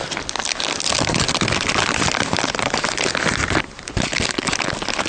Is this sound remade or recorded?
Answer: recorded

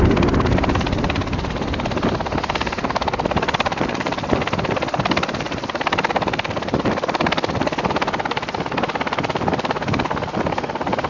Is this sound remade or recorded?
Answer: recorded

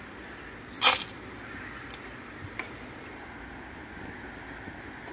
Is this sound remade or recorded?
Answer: recorded